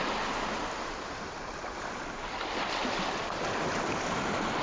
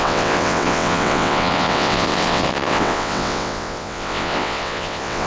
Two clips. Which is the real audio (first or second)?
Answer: first